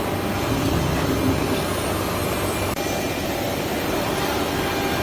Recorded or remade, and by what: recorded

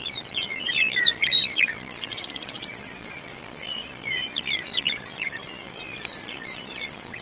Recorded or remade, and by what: remade, vocoder, Vocos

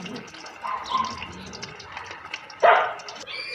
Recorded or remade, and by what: recorded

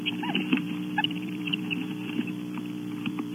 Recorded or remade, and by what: remade, vocoder, BigVGAN v2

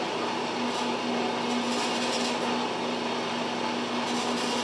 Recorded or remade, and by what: recorded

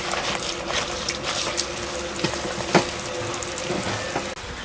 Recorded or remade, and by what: recorded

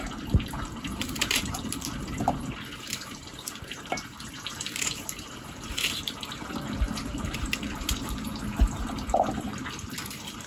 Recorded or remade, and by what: remade, vocoder, BigVGAN v2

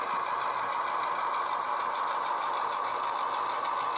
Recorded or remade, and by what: recorded